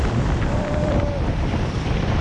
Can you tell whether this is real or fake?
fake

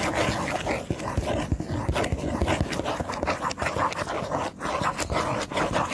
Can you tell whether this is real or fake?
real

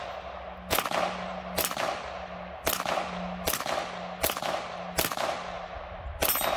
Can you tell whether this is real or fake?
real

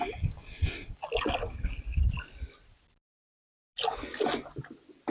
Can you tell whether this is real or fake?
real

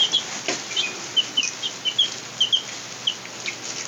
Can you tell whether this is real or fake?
real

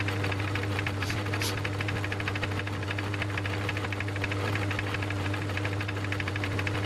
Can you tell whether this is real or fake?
real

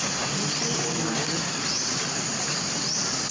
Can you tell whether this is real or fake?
real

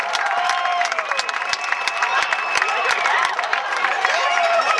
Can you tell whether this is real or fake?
fake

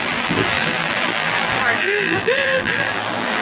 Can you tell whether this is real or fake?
fake